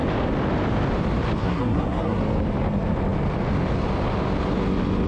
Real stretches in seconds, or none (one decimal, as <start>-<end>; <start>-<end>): 0.0-1.4; 2.2-5.1